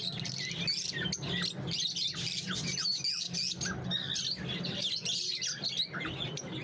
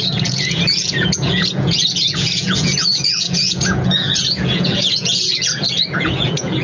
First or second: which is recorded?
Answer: first